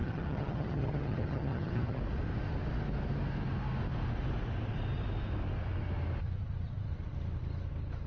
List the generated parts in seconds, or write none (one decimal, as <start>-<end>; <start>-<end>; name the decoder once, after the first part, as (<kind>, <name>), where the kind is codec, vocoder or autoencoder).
0.0-2.0 (vocoder, HiFi-GAN)